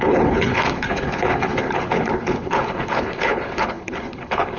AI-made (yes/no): yes